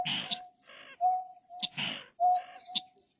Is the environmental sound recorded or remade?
recorded